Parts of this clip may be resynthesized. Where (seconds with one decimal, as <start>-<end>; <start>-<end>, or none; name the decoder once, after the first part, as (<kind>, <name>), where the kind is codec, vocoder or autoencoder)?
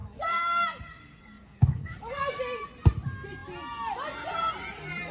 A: 0.0-2.4 (codec, DAC)